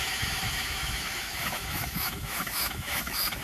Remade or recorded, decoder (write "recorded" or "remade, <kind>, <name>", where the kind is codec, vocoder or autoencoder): remade, autoencoder, DAC-VAE